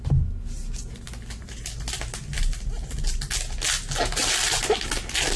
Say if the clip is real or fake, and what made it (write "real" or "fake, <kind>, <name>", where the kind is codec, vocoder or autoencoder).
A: real